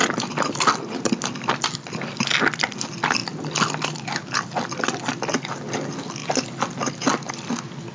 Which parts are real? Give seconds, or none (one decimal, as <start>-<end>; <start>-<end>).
0.0-7.9